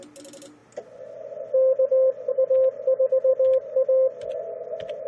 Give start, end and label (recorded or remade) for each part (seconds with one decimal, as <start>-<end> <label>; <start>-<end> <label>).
0.0-5.1 recorded